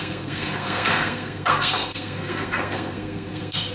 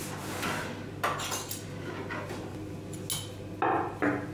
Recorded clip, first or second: second